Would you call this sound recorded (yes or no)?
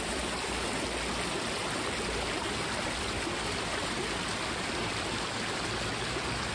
yes